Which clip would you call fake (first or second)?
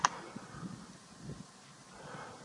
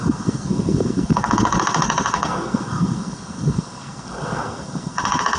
second